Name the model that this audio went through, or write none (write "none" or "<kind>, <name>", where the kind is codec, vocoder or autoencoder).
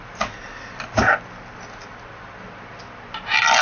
none